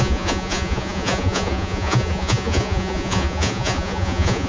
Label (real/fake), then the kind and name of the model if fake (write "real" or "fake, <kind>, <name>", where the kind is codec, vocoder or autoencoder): fake, vocoder, Vocos